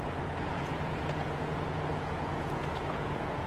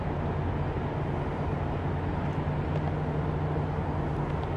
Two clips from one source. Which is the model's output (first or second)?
first